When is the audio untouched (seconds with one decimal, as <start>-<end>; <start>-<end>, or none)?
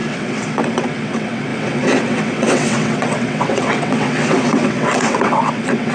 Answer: none